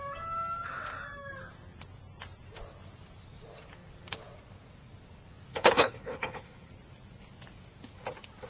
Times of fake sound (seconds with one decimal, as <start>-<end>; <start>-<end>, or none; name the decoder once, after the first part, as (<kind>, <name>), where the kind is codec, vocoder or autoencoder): 5.5-6.7 (codec, HILCodec)